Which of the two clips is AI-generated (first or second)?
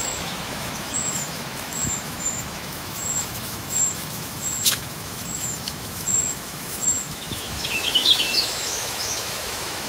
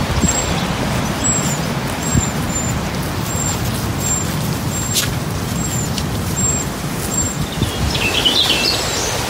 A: first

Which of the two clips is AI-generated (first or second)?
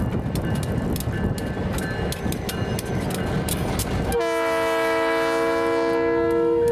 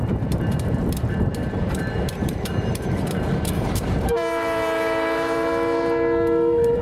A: second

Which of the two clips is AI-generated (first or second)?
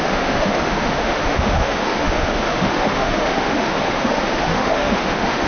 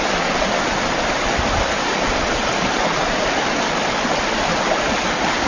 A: first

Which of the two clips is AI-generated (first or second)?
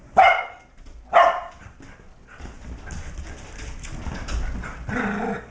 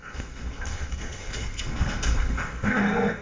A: second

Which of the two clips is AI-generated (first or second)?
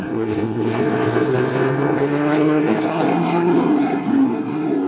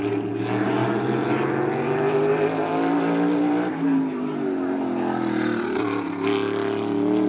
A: first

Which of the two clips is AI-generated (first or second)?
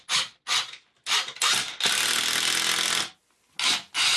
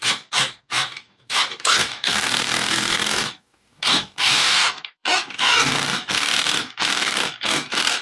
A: second